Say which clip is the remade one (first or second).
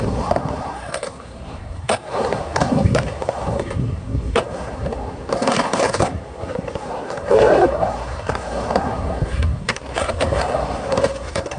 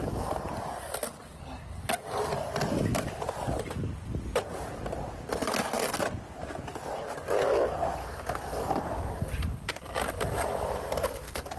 first